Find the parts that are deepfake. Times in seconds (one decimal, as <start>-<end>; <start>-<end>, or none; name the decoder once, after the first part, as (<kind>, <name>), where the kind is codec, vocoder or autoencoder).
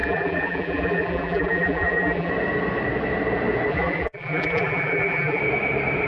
0.0-2.3 (vocoder, BigVGAN v2); 3.7-5.4